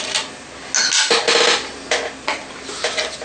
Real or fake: real